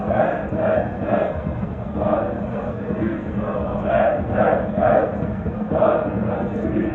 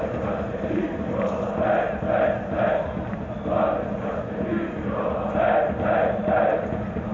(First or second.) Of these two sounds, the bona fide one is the second